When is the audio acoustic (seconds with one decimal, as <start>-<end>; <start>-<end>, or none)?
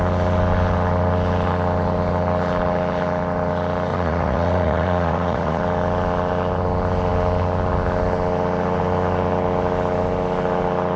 0.0-3.9; 5.6-11.0